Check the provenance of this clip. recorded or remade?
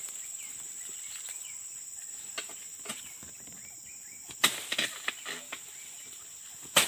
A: recorded